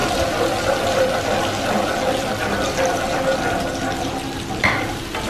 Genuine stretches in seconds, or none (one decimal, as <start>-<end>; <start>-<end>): 0.0-5.3